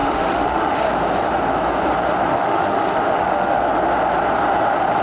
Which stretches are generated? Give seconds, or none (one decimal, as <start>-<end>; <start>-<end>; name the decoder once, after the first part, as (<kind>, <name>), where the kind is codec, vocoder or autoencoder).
0.0-0.9 (autoencoder, DAC-VAE); 2.3-3.6